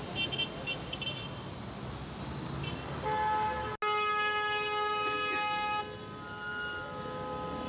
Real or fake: real